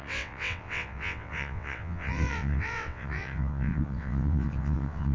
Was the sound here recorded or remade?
remade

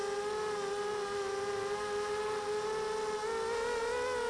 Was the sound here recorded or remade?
recorded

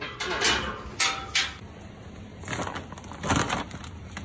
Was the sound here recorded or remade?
recorded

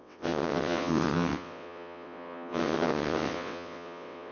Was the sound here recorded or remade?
remade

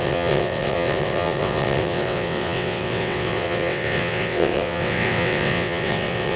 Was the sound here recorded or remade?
remade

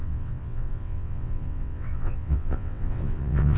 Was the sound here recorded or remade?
remade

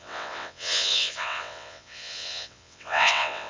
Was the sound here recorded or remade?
remade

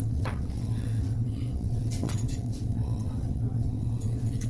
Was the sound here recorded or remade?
remade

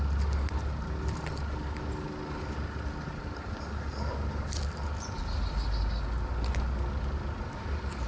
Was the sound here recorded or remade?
recorded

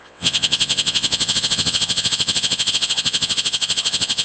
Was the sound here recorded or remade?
remade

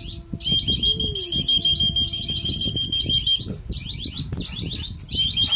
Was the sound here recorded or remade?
recorded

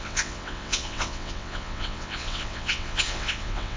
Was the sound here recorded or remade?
remade